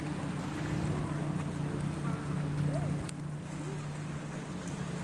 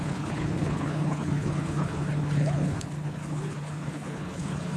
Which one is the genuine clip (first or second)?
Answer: first